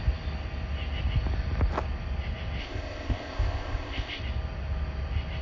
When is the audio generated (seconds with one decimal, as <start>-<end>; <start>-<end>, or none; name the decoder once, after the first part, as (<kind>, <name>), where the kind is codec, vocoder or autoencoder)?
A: 2.6-4.2 (codec, ZipCodec)